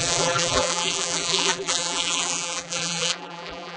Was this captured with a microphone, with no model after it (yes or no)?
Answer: no